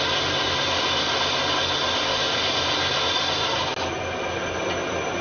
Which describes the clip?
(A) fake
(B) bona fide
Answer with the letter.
B